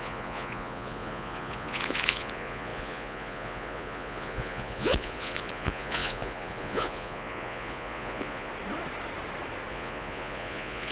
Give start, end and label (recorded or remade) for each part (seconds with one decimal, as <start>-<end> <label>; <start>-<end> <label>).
0.0-8.5 remade; 8.5-9.7 recorded; 9.7-10.9 remade